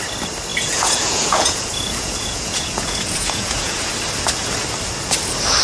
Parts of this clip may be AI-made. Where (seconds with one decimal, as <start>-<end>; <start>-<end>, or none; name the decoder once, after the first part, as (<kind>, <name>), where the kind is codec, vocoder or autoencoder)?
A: 0.5-3.9 (vocoder, Vocos)